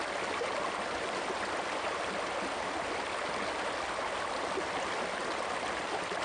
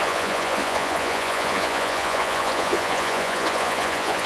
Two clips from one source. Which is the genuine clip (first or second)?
first